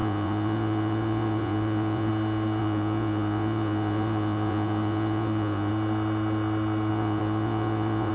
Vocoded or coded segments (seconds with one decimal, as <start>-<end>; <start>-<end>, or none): 0.0-2.1; 2.6-5.7; 6.9-8.1